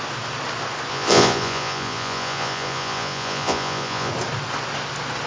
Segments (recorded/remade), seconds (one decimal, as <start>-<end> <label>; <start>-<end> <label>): 0.0-0.9 recorded; 0.9-4.1 remade; 4.1-5.3 recorded